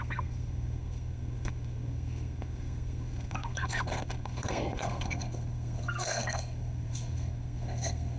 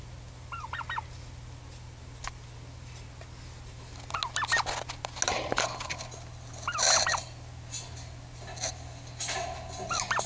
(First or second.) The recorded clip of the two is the second